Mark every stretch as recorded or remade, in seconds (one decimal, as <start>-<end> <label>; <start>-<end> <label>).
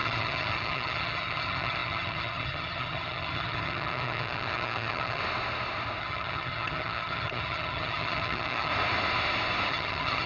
0.0-5.2 remade; 5.2-6.0 recorded; 6.0-8.7 remade; 8.7-9.7 recorded; 9.7-10.3 remade